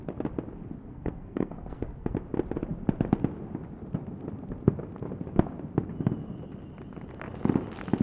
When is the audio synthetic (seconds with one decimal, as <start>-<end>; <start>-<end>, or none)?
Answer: 0.8-2.2